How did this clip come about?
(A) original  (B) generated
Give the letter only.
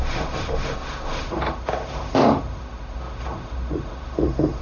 B